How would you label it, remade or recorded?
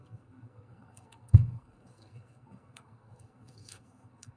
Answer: remade